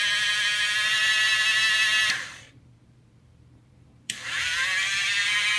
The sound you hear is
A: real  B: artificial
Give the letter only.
B